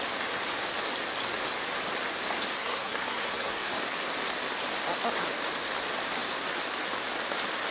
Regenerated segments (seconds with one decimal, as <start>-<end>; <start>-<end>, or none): 2.6-3.7